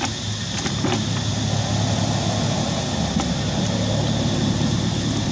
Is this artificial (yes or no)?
no